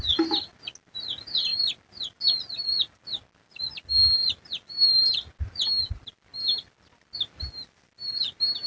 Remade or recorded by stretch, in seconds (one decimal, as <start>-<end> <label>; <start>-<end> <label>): 0.0-8.7 recorded